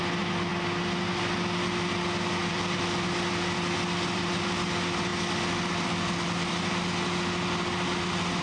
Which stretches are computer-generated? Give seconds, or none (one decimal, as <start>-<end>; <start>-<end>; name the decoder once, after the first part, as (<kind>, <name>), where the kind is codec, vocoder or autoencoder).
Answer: 2.4-4.4 (vocoder, BigVGAN v2)